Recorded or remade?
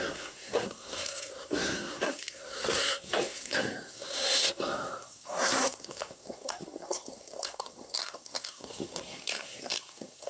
remade